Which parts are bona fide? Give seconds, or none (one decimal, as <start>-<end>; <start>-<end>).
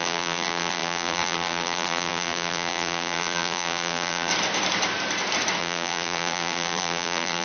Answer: 4.3-5.6